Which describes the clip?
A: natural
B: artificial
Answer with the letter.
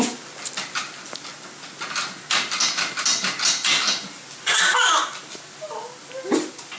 A